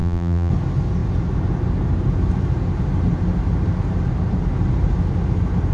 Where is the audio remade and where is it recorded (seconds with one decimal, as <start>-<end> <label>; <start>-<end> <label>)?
0.0-0.5 remade; 0.5-5.7 recorded